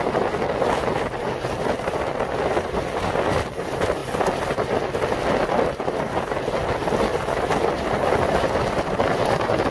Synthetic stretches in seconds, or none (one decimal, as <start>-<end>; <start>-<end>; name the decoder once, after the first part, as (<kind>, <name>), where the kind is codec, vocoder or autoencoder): none